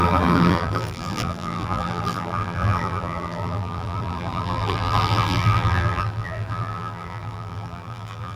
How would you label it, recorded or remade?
remade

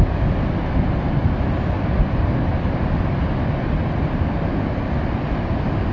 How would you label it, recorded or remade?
recorded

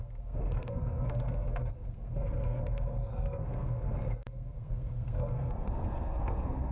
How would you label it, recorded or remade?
remade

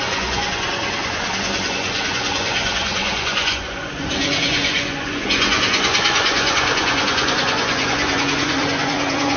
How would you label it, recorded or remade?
remade